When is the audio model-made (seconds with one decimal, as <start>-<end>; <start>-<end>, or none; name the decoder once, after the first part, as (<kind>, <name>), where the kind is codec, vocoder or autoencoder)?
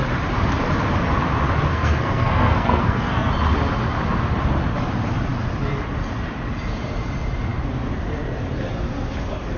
1.7-3.3 (codec, SNAC)